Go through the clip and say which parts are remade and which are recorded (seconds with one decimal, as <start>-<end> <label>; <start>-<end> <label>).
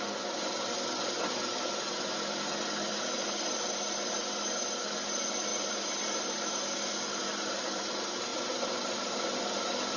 0.0-2.9 recorded; 2.9-4.0 remade; 4.0-5.5 recorded; 5.5-7.9 remade; 7.9-8.3 recorded; 8.3-9.5 remade; 9.5-10.0 recorded